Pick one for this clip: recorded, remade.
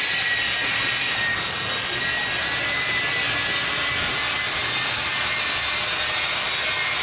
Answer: recorded